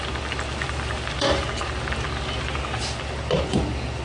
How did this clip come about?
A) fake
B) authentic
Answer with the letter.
B